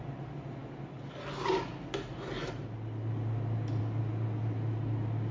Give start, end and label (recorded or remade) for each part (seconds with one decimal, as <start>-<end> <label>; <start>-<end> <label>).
0.0-5.3 recorded